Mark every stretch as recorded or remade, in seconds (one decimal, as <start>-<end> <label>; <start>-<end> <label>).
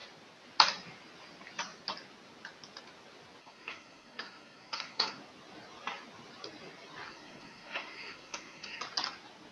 0.0-3.4 recorded; 3.4-5.2 remade; 5.2-7.1 recorded; 7.1-8.8 remade; 8.8-9.5 recorded